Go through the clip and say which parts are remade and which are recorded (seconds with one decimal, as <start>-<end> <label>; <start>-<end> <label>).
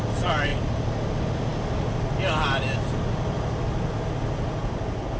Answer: 0.0-5.2 recorded